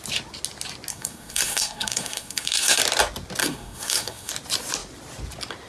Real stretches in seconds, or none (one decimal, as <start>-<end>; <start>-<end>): 0.0-0.9; 2.8-3.4; 4.3-5.7